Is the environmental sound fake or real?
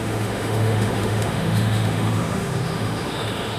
fake